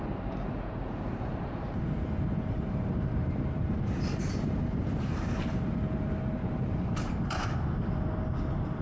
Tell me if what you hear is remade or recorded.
remade